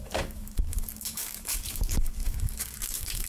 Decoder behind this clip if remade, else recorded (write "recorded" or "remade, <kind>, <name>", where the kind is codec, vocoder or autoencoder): remade, codec, DAC